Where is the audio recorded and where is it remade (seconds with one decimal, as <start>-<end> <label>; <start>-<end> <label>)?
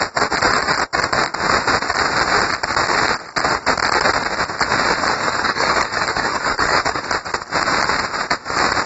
0.0-5.1 recorded; 5.1-7.0 remade; 7.0-8.9 recorded